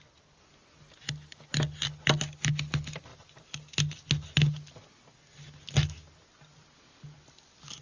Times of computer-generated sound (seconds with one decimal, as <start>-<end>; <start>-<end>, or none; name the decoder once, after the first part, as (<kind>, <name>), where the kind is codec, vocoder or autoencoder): none